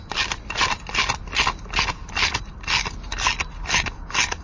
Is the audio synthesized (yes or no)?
no